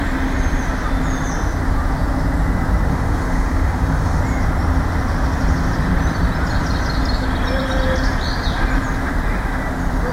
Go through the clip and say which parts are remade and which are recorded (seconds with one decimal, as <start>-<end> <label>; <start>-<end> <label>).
0.0-2.9 recorded; 2.9-4.2 remade; 4.2-10.1 recorded